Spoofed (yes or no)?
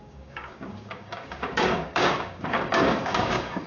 yes